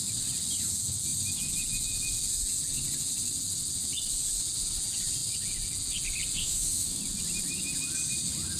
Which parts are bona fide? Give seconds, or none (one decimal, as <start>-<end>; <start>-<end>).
0.0-6.4; 7.0-8.6